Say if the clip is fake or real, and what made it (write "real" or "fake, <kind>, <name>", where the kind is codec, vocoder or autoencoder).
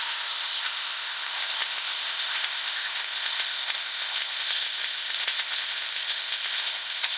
fake, codec, ZipCodec